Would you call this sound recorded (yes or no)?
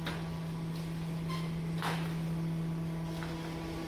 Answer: yes